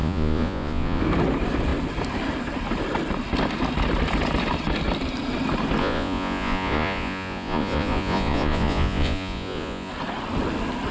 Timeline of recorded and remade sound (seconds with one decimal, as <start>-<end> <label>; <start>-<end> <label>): 0.0-1.0 remade; 1.0-5.8 recorded; 5.8-9.9 remade; 9.9-10.9 recorded